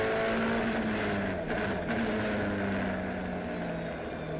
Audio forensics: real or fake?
real